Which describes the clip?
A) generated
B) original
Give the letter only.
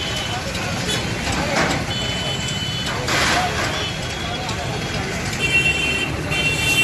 B